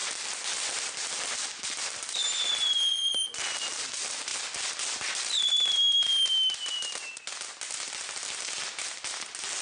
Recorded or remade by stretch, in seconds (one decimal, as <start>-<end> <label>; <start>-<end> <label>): 0.0-9.6 recorded